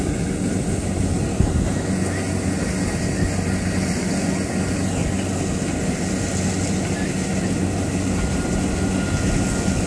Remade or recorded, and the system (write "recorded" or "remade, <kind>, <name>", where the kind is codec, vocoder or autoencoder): recorded